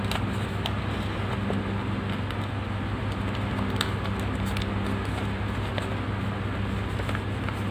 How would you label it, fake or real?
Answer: real